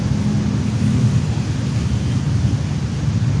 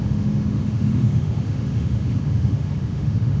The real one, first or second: first